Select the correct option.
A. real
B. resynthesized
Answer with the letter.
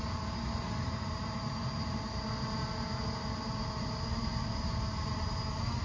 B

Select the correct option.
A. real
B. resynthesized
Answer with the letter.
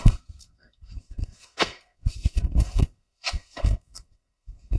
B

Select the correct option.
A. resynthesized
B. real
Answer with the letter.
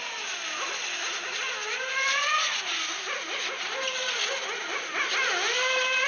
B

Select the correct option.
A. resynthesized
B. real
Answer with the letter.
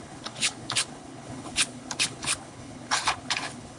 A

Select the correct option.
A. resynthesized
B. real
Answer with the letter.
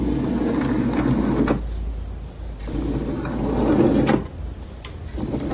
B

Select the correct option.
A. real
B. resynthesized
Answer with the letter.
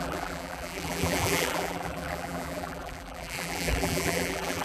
B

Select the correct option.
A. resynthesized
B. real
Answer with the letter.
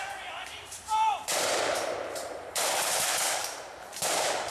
A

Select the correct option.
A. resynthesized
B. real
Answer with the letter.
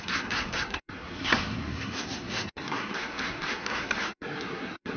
A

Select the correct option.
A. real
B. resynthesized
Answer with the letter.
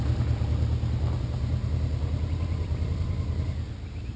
A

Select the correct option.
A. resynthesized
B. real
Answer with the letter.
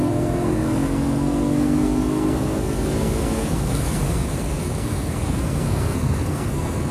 A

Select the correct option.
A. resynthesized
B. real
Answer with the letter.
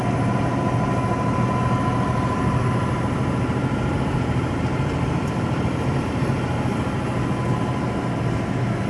B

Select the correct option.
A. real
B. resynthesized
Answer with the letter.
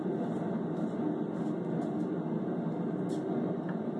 A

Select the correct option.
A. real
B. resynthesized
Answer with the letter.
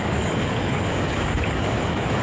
B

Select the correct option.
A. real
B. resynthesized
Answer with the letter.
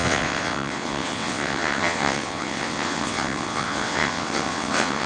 B